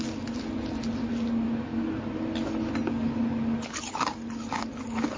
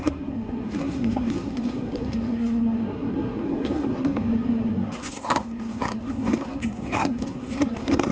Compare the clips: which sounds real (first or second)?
first